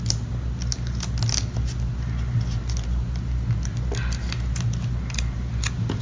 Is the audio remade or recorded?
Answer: recorded